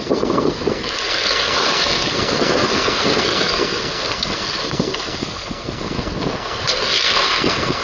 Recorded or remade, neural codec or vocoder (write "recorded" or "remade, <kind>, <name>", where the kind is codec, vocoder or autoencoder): remade, codec, SNAC